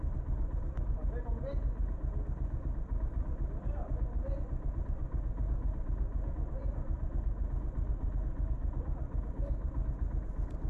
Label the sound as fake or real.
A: real